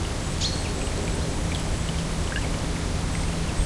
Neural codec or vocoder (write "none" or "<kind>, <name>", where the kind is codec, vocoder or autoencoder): none